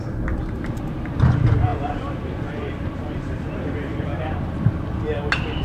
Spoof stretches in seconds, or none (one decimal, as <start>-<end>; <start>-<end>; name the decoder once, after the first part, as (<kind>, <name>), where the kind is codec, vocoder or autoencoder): none